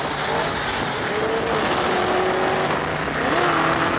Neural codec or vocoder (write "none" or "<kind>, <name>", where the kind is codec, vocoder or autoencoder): none